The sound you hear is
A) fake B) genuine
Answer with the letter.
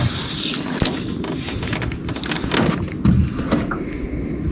B